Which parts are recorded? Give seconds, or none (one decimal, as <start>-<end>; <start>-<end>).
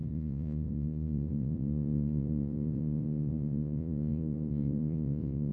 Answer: none